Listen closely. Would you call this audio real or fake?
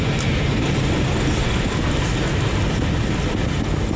real